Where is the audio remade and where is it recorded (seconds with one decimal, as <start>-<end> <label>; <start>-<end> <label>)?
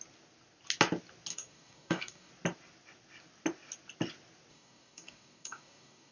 0.0-1.3 recorded; 1.3-2.3 remade; 2.3-4.5 recorded; 4.5-6.1 remade